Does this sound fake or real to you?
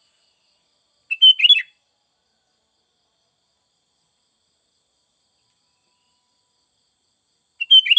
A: real